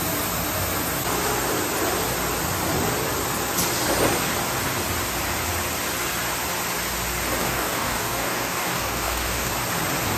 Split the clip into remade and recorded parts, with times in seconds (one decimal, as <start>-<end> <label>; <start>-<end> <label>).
0.0-7.4 recorded; 7.4-9.5 remade; 9.5-10.2 recorded